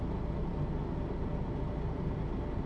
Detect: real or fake real